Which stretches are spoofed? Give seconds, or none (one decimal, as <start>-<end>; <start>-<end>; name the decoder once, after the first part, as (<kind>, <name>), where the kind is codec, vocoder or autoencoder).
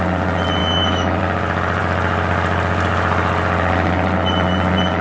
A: 0.6-1.2 (autoencoder, DAC-VAE)